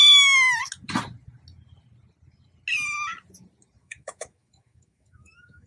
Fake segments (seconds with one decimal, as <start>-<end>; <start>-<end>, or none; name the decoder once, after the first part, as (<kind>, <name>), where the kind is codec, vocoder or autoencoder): 0.0-0.6 (autoencoder, DAC-VAE); 3.8-5.7